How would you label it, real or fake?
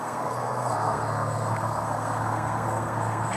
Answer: fake